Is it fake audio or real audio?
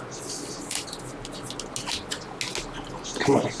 real